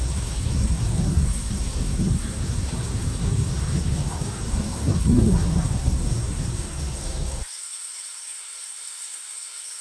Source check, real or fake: fake